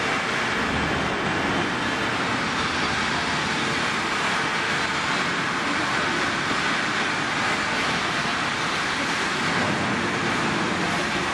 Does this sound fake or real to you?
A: real